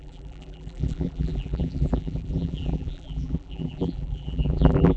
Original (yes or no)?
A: no